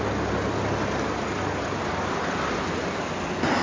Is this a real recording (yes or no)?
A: yes